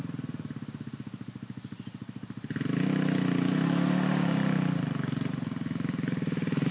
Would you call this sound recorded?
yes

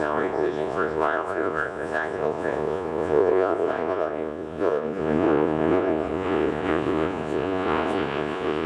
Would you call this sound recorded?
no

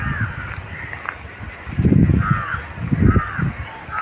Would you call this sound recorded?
yes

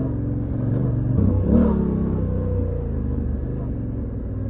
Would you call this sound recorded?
yes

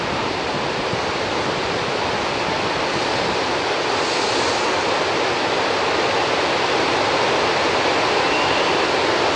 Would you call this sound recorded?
yes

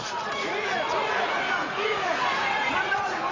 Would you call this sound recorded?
no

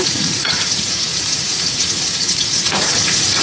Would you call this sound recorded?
no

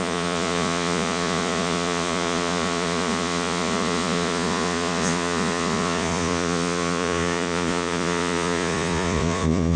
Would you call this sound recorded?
no